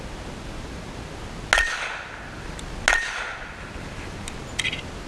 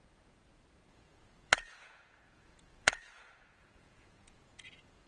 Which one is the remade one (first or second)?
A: second